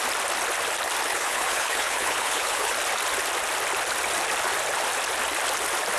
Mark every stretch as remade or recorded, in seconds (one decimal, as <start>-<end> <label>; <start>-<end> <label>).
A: 0.0-1.1 recorded; 1.1-2.7 remade; 2.7-6.0 recorded